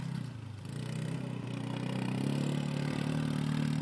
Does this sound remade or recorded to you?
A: recorded